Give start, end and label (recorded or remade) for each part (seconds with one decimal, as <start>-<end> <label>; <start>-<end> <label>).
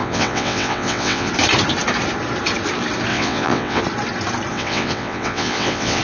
0.0-1.3 remade; 1.3-3.1 recorded; 3.1-3.8 remade; 3.8-4.5 recorded; 4.5-6.0 remade